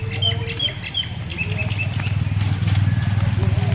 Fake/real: real